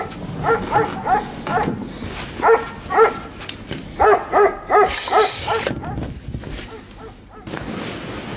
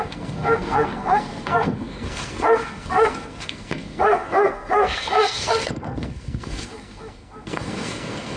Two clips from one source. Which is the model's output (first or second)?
second